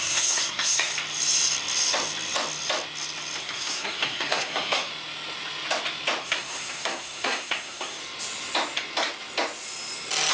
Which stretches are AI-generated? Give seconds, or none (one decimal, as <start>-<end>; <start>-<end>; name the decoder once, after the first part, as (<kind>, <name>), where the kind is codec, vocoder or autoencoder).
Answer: 0.0-0.9 (codec, SNAC); 3.4-4.9; 6.2-8.0